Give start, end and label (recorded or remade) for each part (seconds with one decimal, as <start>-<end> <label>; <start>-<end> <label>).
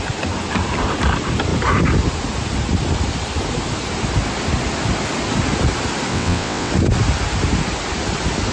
0.0-6.1 recorded; 6.1-6.7 remade; 6.7-8.5 recorded